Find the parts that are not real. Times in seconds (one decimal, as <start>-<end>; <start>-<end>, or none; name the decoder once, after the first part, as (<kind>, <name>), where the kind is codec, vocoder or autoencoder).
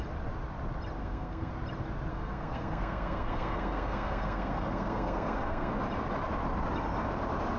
1.0-1.5 (codec, SNAC); 2.1-5.7